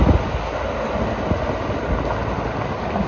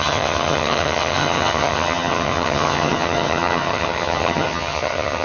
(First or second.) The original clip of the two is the first